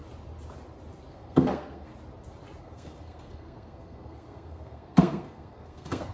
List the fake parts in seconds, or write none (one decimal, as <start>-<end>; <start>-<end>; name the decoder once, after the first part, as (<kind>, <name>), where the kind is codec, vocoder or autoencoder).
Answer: 1.1-1.9 (codec, SNAC); 2.6-6.1